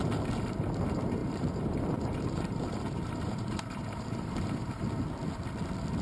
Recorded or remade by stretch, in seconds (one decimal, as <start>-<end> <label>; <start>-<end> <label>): 0.0-1.2 recorded; 1.2-4.8 remade; 4.8-6.0 recorded